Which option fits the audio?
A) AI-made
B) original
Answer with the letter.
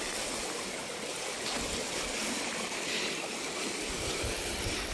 B